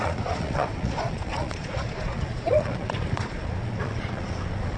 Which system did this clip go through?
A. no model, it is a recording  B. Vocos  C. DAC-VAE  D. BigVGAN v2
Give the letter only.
B